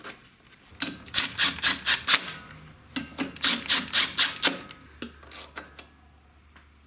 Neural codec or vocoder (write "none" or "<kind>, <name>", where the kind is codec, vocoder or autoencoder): none